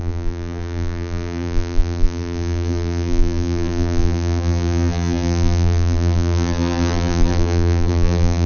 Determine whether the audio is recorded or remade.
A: remade